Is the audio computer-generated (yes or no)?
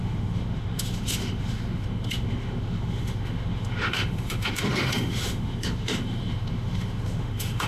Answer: yes